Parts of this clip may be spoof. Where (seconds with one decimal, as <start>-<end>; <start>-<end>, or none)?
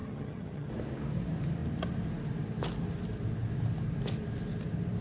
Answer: 0.0-0.7